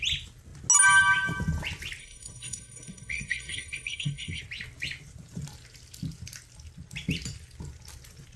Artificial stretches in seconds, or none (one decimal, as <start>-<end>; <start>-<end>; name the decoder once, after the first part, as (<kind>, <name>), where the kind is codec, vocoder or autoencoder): 2.0-4.4 (codec, SNAC)